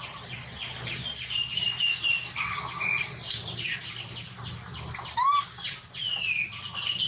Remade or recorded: recorded